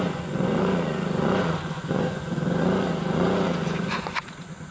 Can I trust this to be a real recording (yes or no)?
no